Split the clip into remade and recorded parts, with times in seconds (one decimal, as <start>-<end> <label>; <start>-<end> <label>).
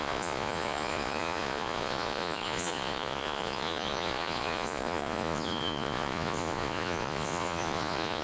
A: 0.0-8.2 remade